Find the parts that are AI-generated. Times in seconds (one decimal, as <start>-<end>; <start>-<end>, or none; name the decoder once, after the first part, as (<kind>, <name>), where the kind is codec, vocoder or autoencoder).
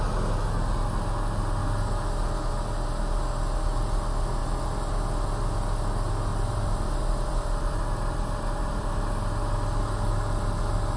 6.3-8.9 (vocoder, BigVGAN v2)